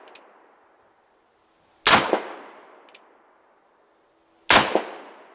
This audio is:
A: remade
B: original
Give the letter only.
B